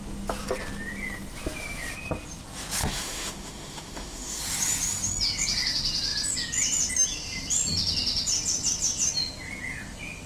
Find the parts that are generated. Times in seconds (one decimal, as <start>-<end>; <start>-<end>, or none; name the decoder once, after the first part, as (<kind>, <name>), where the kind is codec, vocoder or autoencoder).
2.8-4.4 (autoencoder, DAC-VAE)